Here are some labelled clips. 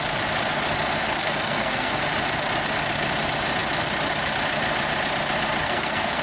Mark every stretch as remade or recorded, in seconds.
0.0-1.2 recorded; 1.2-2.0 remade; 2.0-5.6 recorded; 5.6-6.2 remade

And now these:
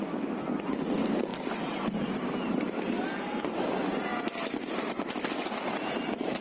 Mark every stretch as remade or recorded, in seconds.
0.0-6.4 recorded

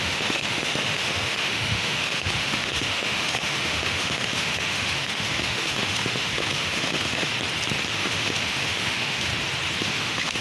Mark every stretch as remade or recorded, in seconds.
0.0-7.3 remade; 7.3-7.9 recorded; 7.9-9.3 remade; 9.3-9.8 recorded; 9.8-10.4 remade

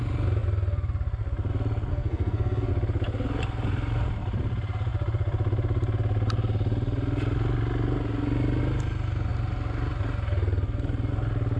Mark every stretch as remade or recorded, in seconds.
0.0-1.9 recorded; 1.9-2.7 remade; 2.7-11.6 recorded

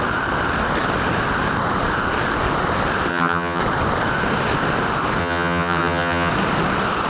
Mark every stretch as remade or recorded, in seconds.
0.0-3.1 recorded; 3.1-3.6 remade; 3.6-5.2 recorded; 5.2-6.3 remade; 6.3-7.1 recorded

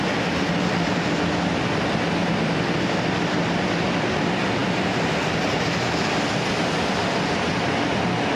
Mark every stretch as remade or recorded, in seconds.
0.0-8.4 recorded